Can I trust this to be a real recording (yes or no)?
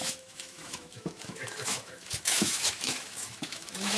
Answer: no